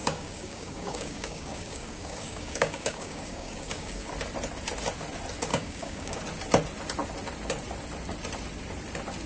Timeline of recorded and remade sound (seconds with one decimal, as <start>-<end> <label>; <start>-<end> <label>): 0.0-4.1 remade; 4.1-5.5 recorded; 5.5-6.2 remade; 6.2-9.3 recorded